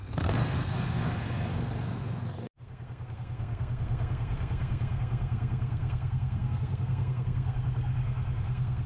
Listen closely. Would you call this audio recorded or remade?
remade